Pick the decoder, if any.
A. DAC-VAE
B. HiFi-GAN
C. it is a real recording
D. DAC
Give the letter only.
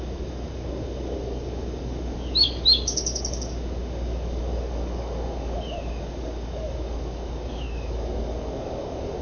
D